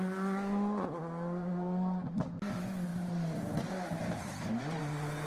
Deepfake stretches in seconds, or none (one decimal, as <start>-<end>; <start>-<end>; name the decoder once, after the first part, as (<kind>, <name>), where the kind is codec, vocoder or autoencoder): 2.9-4.8 (vocoder, BigVGAN v2)